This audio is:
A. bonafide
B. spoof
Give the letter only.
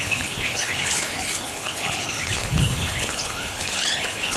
B